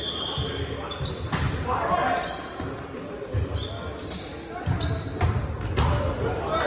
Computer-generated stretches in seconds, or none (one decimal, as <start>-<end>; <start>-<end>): none

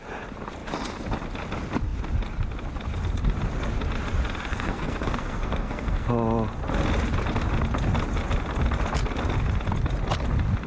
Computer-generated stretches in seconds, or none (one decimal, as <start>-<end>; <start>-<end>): 4.5-6.1

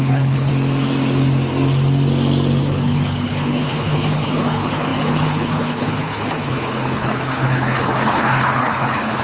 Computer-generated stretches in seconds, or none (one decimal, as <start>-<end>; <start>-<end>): 0.0-0.5; 2.6-9.2